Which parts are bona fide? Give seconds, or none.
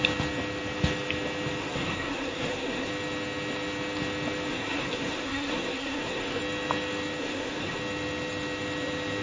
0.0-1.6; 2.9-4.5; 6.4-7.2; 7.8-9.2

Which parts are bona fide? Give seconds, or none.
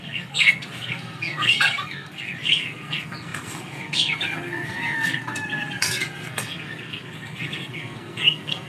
none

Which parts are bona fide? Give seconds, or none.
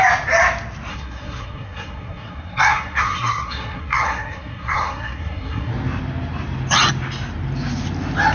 0.0-0.9; 5.7-8.3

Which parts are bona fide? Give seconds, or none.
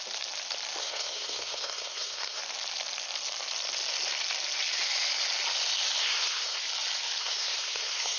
0.0-0.8; 2.4-6.0; 6.6-7.2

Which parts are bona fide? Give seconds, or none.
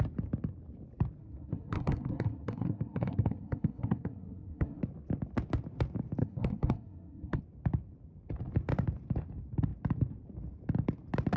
0.0-1.2; 4.8-6.2; 7.4-11.4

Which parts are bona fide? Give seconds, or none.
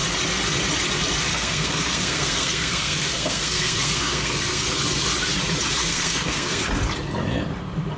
0.0-1.3; 4.7-5.8; 6.6-8.0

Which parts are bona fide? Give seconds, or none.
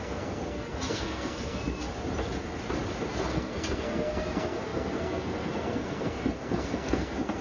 1.6-3.1